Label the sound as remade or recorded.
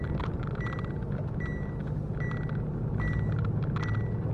recorded